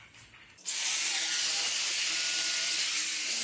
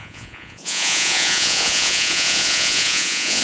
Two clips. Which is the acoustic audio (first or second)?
first